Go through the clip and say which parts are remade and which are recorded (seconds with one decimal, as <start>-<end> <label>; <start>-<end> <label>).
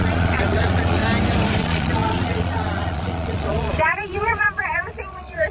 0.0-1.0 remade; 1.0-1.6 recorded; 1.6-5.5 remade